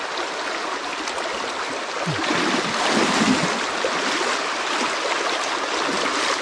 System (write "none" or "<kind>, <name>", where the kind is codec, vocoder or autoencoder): none